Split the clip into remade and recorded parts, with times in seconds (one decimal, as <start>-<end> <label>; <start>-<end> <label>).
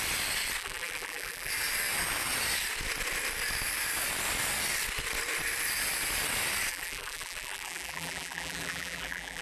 0.0-0.6 recorded; 0.6-1.5 remade; 1.5-6.7 recorded; 6.7-9.4 remade